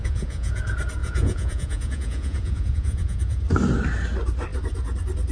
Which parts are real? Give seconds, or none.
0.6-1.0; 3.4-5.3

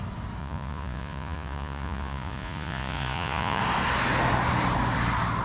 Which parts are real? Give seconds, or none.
0.0-0.4; 3.6-5.4